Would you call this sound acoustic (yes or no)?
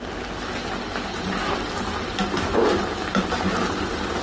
yes